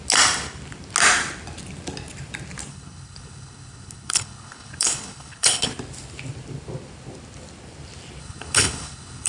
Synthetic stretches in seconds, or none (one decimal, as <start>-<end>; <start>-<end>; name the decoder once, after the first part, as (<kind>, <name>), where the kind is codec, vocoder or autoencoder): 2.7-5.7 (codec, HILCodec); 8.2-9.3